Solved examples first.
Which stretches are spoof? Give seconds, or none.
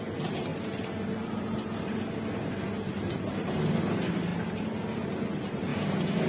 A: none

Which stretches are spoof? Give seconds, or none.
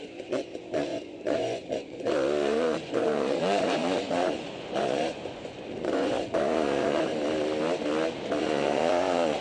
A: 0.0-7.1 (vocoder, Vocos); 8.4-9.4